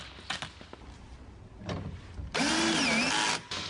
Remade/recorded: recorded